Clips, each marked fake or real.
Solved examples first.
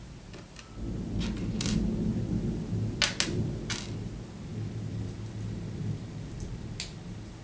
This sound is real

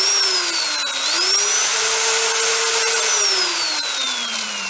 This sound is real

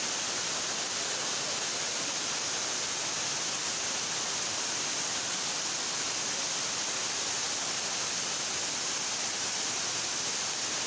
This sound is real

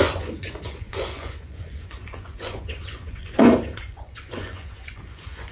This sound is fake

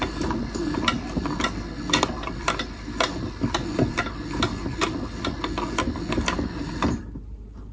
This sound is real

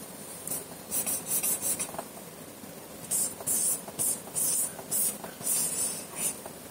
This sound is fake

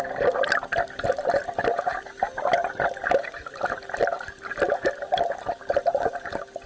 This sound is real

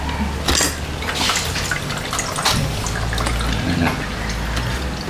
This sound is real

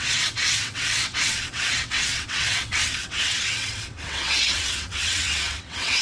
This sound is fake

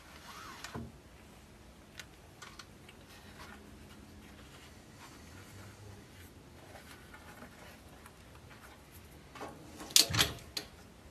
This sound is real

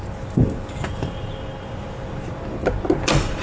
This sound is real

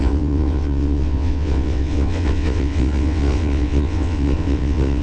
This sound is fake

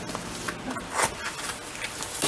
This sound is real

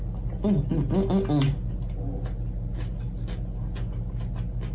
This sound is real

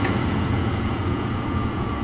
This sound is fake